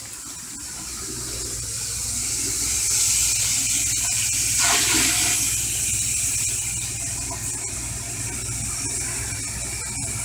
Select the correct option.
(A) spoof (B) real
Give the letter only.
B